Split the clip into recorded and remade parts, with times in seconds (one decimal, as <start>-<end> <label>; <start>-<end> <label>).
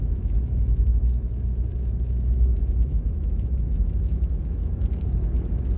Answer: 0.0-5.8 remade